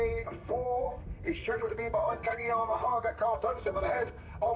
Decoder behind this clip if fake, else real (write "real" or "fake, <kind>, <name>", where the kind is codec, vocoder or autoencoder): fake, codec, SNAC